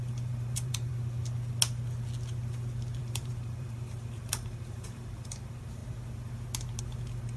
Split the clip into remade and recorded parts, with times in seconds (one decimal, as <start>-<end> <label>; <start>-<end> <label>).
0.0-0.9 remade; 0.9-3.0 recorded; 3.0-5.8 remade; 5.8-6.8 recorded; 6.8-7.4 remade